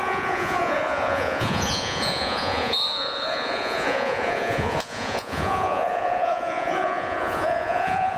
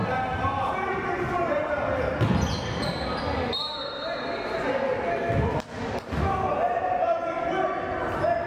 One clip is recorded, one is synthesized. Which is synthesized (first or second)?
first